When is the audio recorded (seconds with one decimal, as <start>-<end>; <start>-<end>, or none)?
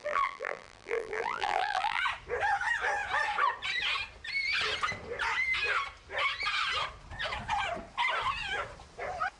2.0-9.4